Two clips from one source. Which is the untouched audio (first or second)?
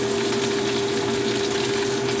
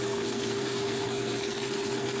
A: first